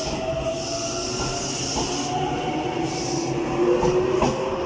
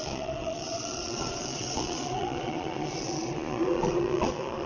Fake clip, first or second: second